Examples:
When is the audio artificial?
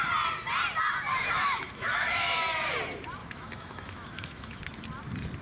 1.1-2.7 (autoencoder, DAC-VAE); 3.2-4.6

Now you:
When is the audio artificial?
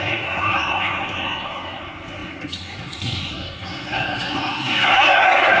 0.0-5.6 (codec, SNAC)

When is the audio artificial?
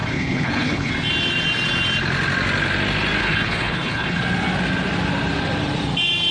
0.0-0.9 (codec, HILCodec); 3.2-4.2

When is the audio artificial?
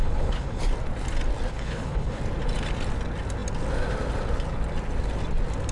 0.0-0.6 (codec, HILCodec); 1.5-2.2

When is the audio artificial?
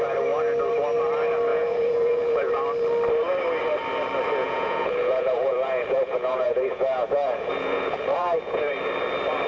1.5-2.5 (vocoder, Vocos); 4.4-8.6